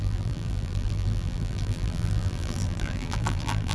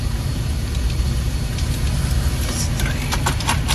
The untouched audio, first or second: second